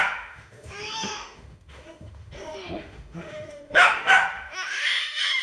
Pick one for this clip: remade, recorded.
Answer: remade